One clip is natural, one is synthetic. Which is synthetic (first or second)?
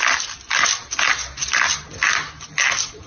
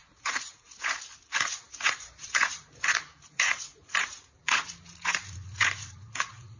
second